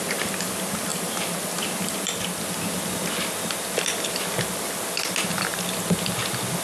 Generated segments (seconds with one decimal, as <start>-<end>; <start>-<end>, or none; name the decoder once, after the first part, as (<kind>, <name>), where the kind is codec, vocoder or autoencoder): none